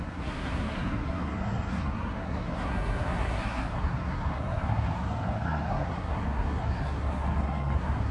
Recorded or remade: remade